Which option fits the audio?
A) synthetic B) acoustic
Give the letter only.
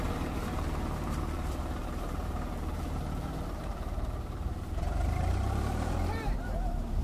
A